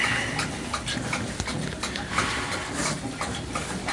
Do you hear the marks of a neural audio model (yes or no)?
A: no